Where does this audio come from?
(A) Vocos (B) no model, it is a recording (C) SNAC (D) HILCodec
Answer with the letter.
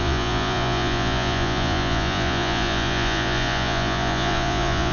A